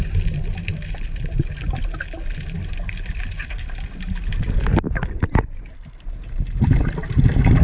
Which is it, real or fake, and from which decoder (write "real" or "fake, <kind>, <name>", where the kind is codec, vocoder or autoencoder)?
real